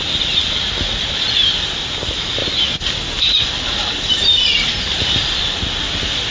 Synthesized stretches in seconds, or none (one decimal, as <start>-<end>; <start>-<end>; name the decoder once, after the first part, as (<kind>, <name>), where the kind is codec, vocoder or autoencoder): none